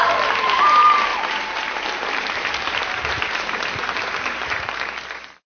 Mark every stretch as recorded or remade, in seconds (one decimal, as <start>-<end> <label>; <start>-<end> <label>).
0.0-5.5 remade